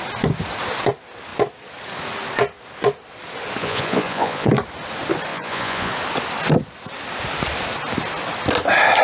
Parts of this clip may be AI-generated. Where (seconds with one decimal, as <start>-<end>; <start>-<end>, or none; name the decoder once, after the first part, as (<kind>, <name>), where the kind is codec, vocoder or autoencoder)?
3.6-4.5 (vocoder, Vocos); 5.3-5.9